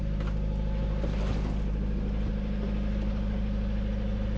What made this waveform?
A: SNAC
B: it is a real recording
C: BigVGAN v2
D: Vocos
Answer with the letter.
B